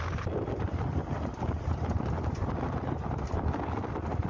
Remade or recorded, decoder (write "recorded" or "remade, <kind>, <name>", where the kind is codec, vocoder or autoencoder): recorded